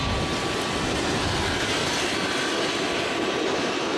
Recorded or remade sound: recorded